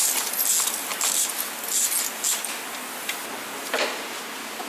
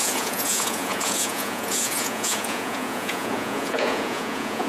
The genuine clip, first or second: first